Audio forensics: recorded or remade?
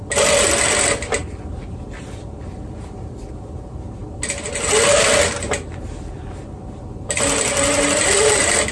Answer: recorded